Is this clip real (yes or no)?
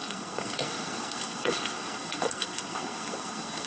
no